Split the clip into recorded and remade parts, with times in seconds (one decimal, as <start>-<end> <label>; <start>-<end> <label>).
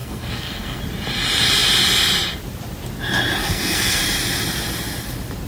0.0-0.8 remade; 0.8-3.4 recorded; 3.4-4.0 remade; 4.0-5.5 recorded